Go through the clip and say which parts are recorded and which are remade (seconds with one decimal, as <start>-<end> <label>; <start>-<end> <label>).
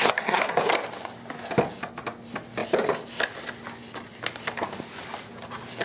0.0-0.7 remade; 0.7-5.8 recorded